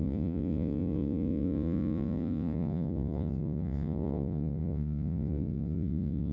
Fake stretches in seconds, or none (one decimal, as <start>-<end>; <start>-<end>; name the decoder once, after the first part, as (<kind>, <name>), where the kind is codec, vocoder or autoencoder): 0.0-6.3 (vocoder, Vocos)